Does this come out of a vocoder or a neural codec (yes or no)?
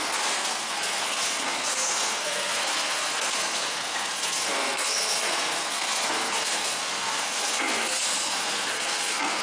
yes